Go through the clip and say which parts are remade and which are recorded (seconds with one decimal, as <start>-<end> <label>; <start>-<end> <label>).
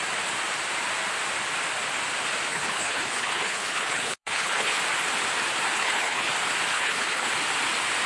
0.0-2.5 recorded; 2.5-4.8 remade; 4.8-5.7 recorded; 5.7-6.3 remade; 6.3-6.7 recorded; 6.7-7.3 remade; 7.3-8.1 recorded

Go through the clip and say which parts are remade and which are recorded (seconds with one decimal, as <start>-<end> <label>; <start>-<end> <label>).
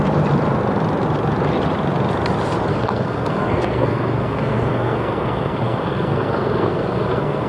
0.0-2.7 recorded; 2.7-7.5 remade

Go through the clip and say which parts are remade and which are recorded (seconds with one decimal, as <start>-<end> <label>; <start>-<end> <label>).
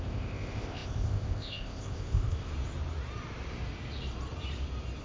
0.0-2.5 remade; 2.5-5.0 recorded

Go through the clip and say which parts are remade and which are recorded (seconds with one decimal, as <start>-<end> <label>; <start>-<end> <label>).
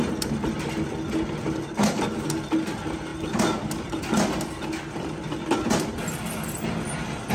0.0-7.3 recorded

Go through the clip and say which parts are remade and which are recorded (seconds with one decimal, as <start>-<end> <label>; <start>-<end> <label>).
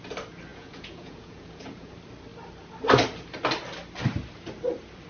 0.0-0.5 recorded; 0.5-1.9 remade; 1.9-5.1 recorded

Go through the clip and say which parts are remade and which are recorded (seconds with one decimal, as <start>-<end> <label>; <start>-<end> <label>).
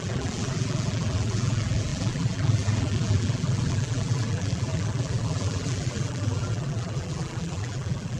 0.0-8.2 remade